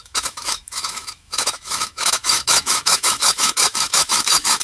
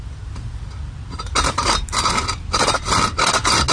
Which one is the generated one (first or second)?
first